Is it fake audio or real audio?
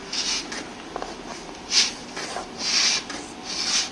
real